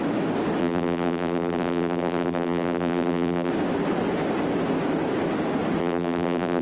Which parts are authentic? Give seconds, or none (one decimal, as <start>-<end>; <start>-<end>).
0.0-0.6; 3.5-5.8